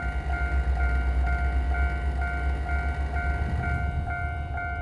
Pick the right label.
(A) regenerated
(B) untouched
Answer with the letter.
B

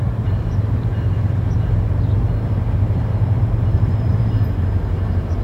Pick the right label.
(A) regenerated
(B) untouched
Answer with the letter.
A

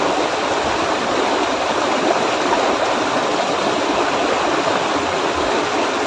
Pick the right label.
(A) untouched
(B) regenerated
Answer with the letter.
A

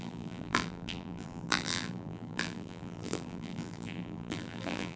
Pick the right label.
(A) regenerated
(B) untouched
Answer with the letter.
A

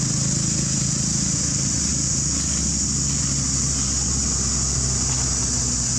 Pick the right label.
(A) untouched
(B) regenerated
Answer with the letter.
A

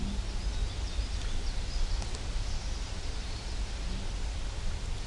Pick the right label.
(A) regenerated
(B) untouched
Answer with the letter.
B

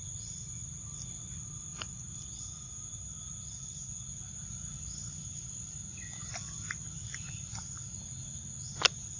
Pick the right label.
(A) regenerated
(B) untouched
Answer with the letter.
B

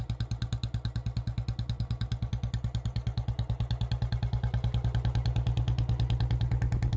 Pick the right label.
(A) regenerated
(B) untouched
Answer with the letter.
B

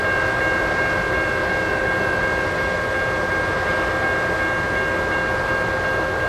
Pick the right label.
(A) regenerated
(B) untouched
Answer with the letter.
B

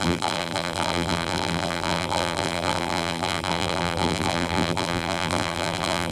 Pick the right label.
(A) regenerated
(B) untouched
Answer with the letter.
A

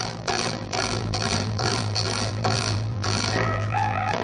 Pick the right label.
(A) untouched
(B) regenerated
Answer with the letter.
B